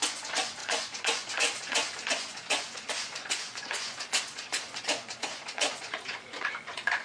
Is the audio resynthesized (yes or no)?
yes